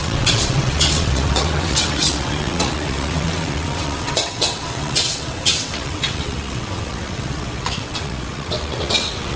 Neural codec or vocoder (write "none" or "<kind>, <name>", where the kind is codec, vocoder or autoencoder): vocoder, WaveNeXt